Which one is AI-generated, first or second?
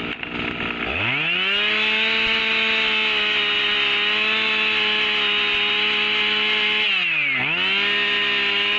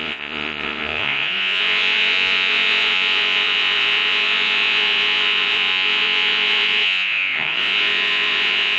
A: second